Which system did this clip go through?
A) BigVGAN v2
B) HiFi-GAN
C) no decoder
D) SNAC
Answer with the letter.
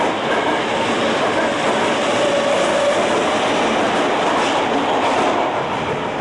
C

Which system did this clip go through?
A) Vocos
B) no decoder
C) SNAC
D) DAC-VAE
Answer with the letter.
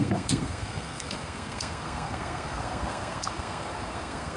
C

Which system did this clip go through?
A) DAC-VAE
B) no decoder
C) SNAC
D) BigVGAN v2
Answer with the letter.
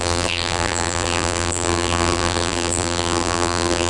D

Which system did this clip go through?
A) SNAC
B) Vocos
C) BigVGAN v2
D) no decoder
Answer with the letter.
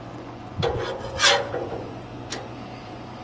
B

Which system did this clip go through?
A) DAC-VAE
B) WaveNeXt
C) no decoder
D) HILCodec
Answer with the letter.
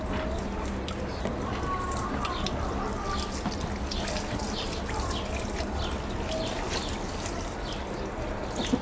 C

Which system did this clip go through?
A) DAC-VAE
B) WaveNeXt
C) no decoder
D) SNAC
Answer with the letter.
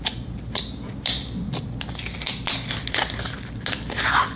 C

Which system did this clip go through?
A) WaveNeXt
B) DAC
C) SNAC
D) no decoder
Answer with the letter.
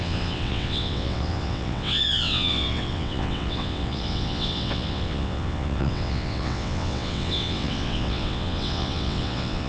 A